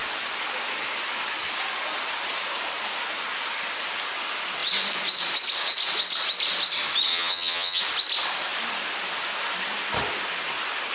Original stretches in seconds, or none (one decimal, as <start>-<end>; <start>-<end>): 0.0-7.1; 7.8-10.9